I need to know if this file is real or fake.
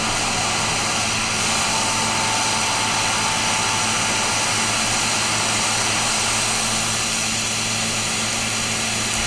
real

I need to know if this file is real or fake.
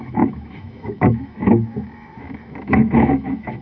fake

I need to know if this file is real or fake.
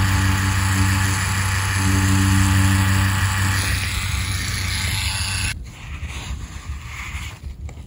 real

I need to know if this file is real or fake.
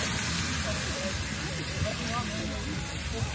real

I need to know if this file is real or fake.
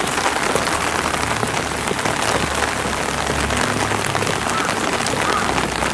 real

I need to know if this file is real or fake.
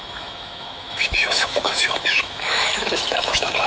fake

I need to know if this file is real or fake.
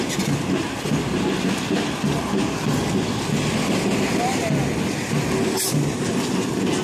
real